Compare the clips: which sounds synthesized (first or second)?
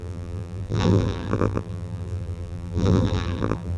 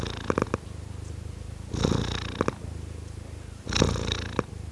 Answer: first